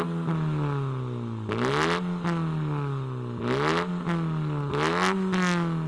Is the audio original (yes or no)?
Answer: yes